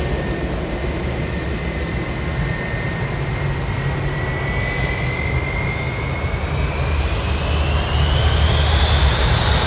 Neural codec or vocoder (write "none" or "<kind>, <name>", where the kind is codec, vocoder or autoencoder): none